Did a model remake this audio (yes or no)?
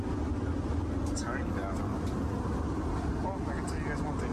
no